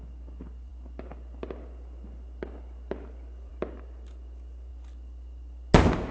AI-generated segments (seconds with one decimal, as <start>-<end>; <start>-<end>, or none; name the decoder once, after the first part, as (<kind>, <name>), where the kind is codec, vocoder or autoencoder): none